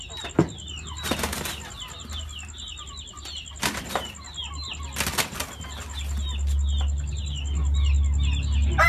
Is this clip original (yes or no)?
yes